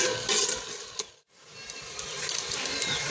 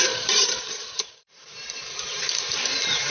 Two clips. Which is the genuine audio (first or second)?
first